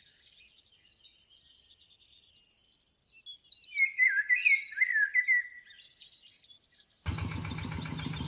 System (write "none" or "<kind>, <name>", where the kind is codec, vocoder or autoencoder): none